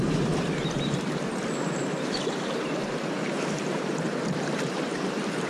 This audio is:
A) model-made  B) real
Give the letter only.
A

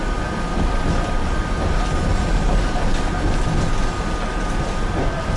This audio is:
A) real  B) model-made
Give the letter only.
A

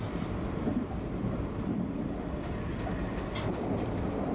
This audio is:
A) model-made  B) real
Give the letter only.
A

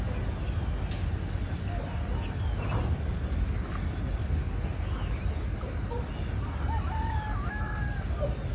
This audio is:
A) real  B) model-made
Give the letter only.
A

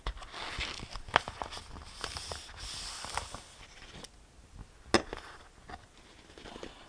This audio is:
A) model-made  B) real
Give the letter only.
B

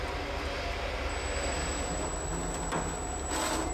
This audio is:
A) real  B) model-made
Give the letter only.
A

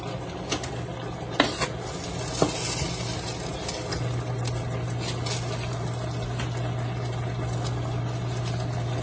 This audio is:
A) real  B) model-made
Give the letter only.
A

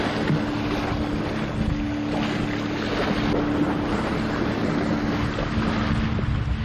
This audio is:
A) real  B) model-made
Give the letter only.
A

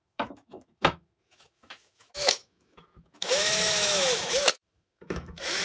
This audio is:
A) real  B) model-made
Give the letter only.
B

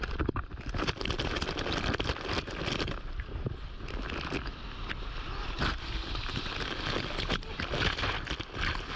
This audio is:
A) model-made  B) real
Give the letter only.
B